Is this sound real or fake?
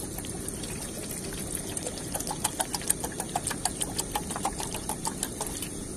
real